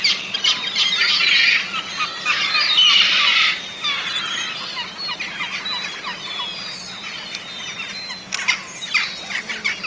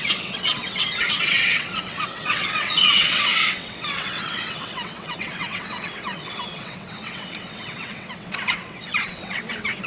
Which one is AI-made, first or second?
second